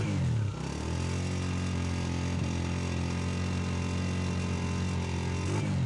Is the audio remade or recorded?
recorded